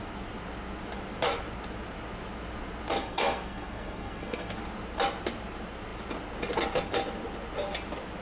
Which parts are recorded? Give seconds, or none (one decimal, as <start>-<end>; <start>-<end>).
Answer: 0.0-3.0; 4.6-8.2